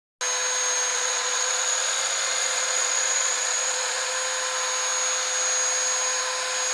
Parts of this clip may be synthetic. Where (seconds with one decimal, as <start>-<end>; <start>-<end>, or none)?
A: 0.9-4.1